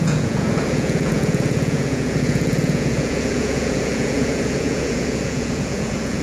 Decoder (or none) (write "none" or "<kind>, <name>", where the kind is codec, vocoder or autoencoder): vocoder, Vocos